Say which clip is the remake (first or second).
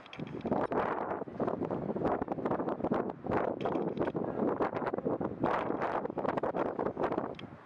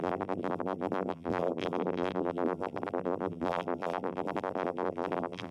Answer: second